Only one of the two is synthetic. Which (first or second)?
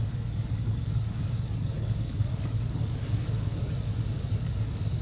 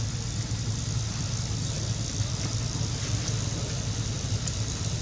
first